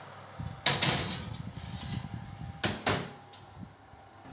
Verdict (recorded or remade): recorded